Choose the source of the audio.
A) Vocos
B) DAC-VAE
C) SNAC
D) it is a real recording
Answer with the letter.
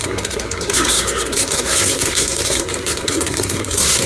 C